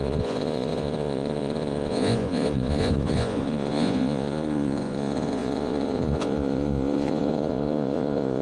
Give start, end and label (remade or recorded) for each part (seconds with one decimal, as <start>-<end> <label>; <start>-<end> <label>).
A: 0.0-8.4 remade